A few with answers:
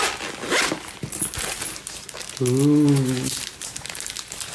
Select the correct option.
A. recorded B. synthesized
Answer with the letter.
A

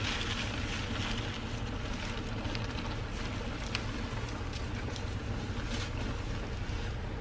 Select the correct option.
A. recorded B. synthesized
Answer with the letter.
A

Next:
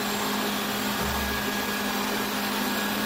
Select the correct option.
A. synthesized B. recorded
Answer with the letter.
B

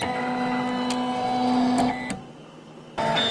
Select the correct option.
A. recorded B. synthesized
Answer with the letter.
A